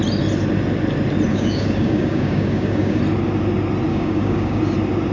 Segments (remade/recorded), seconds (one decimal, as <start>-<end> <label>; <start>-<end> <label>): 0.0-1.3 recorded; 1.3-3.0 remade; 3.0-3.9 recorded; 3.9-4.6 remade; 4.6-5.1 recorded